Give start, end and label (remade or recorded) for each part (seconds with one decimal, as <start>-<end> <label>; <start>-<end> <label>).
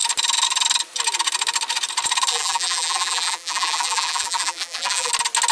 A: 0.0-2.3 recorded; 2.3-5.1 remade; 5.1-5.5 recorded